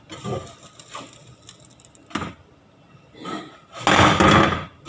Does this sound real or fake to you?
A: real